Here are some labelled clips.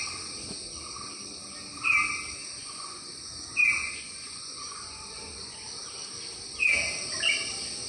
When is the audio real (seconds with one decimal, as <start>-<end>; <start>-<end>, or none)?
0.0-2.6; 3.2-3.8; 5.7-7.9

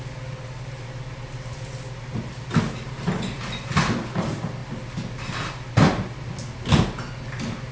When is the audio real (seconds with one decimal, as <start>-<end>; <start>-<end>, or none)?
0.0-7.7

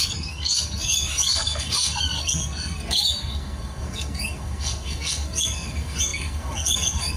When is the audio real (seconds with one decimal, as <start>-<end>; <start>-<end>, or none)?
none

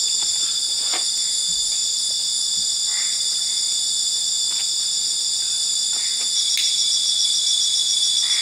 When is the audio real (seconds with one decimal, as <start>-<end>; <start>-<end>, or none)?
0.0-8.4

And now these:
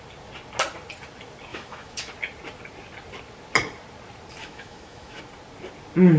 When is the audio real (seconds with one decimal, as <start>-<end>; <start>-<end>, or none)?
0.0-1.5; 2.1-4.4; 5.2-6.2